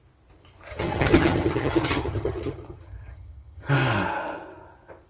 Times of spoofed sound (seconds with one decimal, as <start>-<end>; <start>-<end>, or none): 0.7-3.7